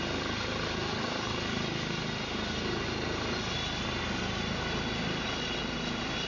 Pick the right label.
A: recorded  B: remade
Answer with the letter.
A